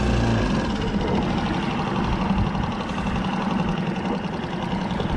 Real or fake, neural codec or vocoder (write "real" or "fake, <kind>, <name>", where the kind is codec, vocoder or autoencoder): real